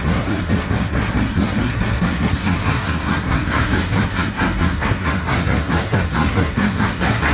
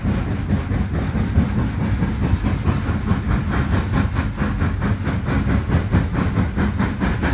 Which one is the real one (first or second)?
second